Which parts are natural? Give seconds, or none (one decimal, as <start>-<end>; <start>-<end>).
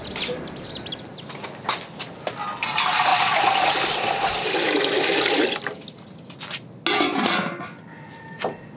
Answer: 0.0-8.8